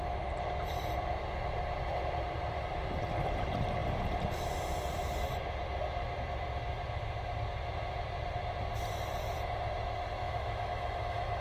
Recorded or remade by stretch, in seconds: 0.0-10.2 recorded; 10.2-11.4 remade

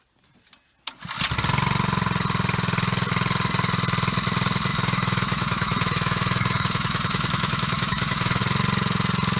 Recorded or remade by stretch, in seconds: 0.0-4.7 recorded; 4.7-8.4 remade; 8.4-9.4 recorded

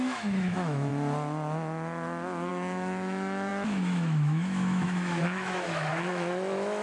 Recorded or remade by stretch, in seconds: 0.0-0.9 remade; 0.9-2.5 recorded; 2.5-6.8 remade

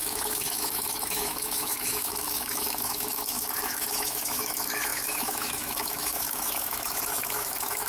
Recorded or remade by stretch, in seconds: 0.0-7.9 remade

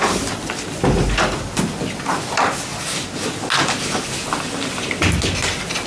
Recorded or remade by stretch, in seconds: 0.0-5.9 recorded

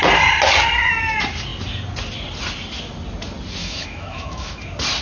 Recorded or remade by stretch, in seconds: 0.0-3.6 recorded; 3.6-4.6 remade; 4.6-5.0 recorded